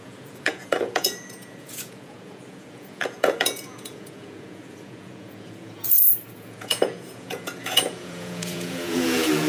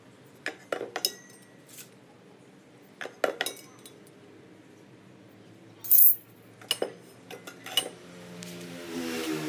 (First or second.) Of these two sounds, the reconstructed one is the first